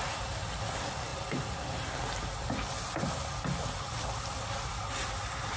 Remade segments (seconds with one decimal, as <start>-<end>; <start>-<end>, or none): none